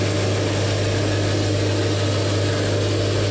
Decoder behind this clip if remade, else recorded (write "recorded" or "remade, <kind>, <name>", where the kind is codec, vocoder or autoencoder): recorded